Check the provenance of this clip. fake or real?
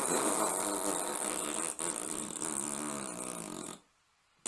real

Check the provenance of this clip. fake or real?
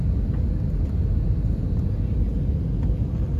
real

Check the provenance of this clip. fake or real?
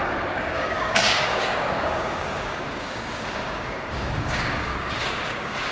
fake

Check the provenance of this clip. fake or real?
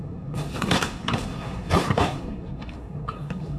fake